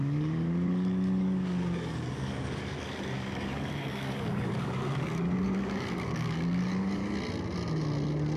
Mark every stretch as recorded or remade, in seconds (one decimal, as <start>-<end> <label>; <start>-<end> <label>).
0.0-7.0 remade; 7.0-8.4 recorded